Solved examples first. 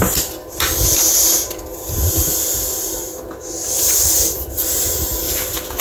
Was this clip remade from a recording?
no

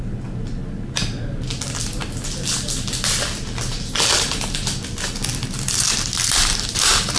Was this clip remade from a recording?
no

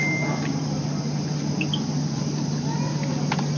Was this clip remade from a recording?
no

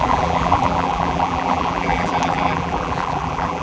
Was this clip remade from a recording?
yes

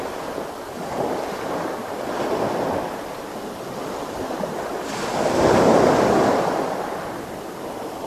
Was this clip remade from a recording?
no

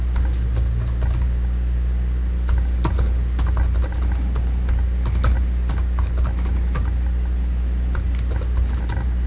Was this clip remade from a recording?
no